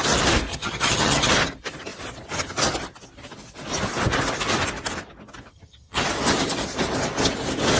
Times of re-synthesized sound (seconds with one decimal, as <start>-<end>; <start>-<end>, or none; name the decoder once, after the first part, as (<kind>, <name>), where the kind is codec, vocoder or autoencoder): 0.5-1.3 (vocoder, HiFi-GAN); 5.5-6.0